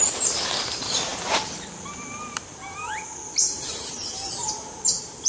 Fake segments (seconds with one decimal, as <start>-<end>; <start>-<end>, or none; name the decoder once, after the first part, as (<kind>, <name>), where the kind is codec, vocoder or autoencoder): none